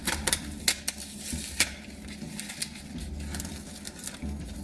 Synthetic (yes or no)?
no